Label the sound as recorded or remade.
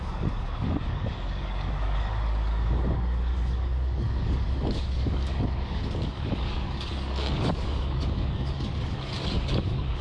remade